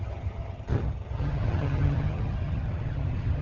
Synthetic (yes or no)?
yes